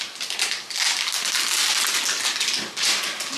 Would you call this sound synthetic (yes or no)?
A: no